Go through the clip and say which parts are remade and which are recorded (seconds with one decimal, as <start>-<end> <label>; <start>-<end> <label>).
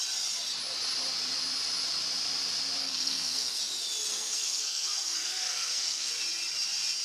0.0-2.8 recorded; 2.8-3.6 remade; 3.6-4.1 recorded; 4.1-6.1 remade; 6.1-7.0 recorded